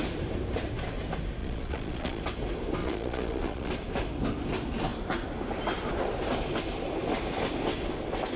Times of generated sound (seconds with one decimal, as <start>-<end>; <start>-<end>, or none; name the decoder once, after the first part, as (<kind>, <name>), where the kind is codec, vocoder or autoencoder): 1.4-2.2 (vocoder, Vocos); 2.8-3.7